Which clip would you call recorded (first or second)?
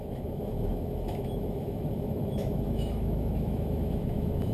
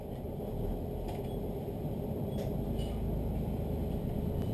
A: second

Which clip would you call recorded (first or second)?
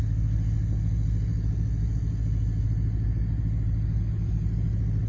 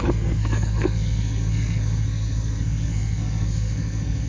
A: first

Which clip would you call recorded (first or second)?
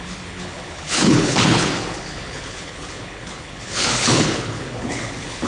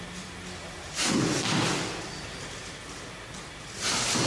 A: second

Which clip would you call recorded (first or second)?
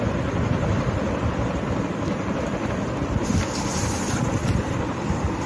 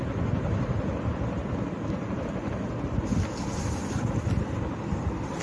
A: second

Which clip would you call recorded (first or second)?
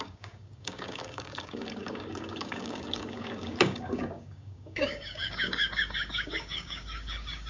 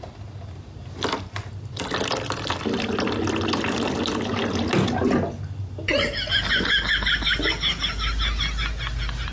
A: second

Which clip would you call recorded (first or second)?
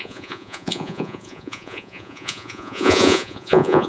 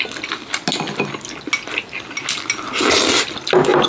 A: second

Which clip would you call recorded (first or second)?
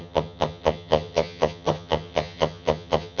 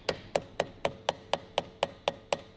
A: second